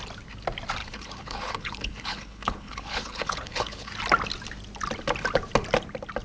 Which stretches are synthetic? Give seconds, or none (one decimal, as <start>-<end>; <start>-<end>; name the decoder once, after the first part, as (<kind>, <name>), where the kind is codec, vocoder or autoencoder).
0.8-3.9 (codec, HILCodec)